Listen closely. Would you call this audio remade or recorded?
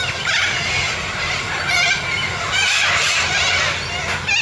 recorded